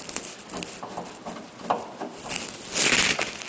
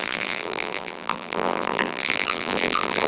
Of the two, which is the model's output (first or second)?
second